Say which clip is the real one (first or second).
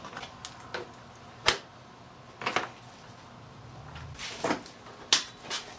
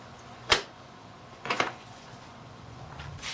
first